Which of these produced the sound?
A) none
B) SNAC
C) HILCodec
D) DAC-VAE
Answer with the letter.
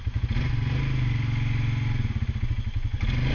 A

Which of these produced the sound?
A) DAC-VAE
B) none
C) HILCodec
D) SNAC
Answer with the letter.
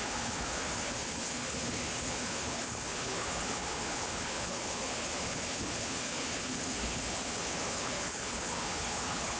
C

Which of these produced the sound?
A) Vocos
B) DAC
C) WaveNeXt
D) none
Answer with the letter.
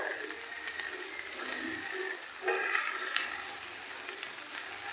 D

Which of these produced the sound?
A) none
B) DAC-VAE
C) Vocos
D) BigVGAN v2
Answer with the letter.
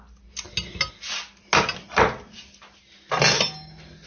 A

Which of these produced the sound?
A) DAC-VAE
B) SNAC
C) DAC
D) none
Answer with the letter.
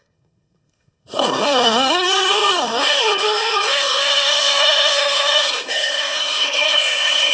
B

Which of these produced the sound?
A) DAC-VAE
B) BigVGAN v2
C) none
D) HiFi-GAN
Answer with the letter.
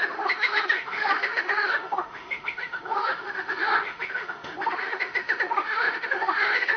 A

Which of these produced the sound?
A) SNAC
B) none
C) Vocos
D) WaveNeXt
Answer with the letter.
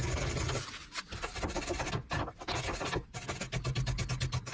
B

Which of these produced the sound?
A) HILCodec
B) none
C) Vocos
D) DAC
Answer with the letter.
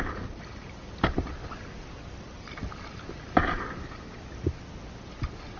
B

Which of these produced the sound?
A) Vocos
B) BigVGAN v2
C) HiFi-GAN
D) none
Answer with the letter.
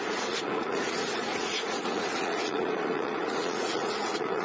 A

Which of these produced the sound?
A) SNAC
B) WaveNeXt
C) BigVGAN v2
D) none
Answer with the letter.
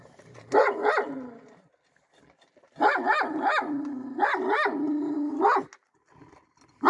D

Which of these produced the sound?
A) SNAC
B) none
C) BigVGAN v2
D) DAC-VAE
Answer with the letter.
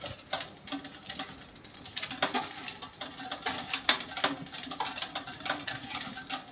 B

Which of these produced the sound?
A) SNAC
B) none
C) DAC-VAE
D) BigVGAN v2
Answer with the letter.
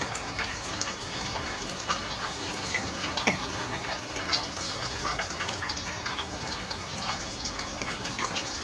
A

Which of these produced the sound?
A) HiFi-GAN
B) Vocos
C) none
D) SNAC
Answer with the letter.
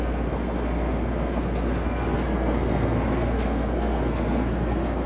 D